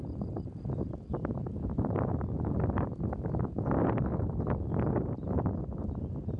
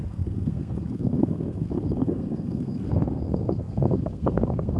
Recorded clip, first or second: first